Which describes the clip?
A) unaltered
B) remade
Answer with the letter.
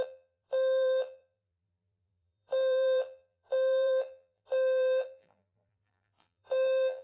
B